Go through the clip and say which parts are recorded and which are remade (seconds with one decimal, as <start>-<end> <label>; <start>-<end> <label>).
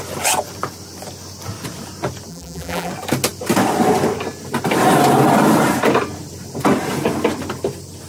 0.0-2.3 recorded; 2.3-2.9 remade; 2.9-8.1 recorded